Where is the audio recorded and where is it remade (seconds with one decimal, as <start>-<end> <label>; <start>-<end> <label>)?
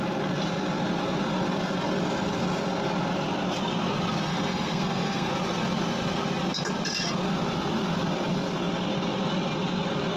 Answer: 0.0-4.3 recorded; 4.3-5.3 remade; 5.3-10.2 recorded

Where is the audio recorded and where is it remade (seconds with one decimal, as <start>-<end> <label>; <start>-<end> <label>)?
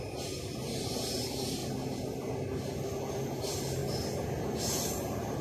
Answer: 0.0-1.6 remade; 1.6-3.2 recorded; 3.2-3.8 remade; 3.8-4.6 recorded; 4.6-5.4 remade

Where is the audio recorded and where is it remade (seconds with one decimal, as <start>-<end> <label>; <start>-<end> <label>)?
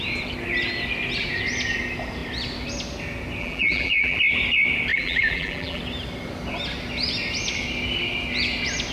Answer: 0.0-3.4 recorded; 3.4-4.2 remade; 4.2-4.9 recorded; 4.9-5.8 remade; 5.8-8.9 recorded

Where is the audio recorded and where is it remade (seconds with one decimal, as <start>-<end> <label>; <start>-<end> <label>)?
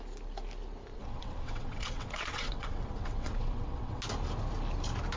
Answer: 0.0-0.9 recorded; 0.9-4.0 remade; 4.0-5.2 recorded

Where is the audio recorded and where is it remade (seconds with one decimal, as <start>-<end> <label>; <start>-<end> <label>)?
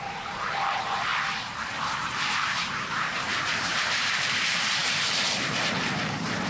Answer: 0.0-1.1 remade; 1.1-2.6 recorded; 2.6-6.5 remade